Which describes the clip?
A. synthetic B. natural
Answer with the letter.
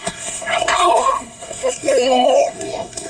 A